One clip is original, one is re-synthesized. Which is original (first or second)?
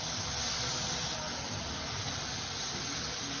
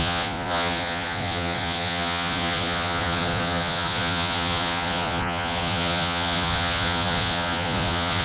first